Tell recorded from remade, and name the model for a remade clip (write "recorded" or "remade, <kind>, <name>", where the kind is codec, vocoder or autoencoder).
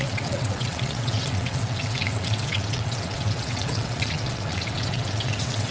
remade, vocoder, WaveNeXt